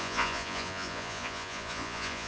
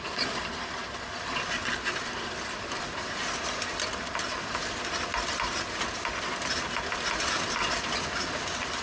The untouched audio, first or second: second